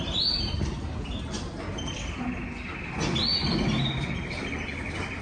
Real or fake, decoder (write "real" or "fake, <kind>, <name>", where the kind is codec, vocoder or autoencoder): real